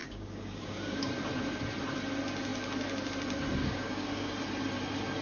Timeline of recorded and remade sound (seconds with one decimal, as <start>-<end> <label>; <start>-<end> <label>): 0.0-1.1 remade; 1.1-3.6 recorded; 3.6-4.3 remade; 4.3-5.2 recorded